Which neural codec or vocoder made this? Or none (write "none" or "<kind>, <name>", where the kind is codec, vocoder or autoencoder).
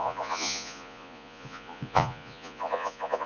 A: vocoder, Vocos